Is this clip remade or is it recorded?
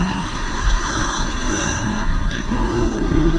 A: remade